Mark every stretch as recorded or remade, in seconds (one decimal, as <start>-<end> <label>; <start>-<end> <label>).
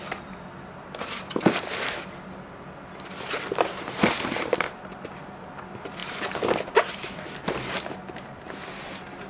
0.0-9.3 recorded